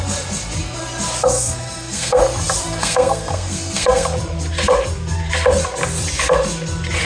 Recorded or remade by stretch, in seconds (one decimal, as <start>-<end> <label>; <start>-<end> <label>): 0.0-1.2 recorded; 1.2-2.2 remade; 2.2-2.8 recorded; 2.8-4.1 remade; 4.1-7.0 recorded